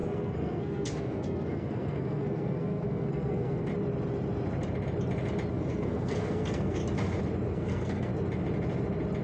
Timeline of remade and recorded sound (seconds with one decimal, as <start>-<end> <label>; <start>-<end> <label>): 0.0-3.7 remade; 3.7-5.5 recorded; 5.5-6.8 remade; 6.8-7.5 recorded; 7.5-8.1 remade; 8.1-9.2 recorded